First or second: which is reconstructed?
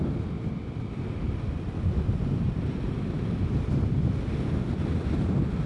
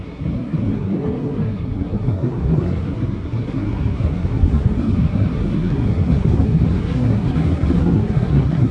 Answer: second